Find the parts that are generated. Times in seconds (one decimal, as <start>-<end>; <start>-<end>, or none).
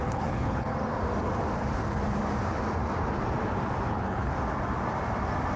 0.0-0.7; 3.9-4.3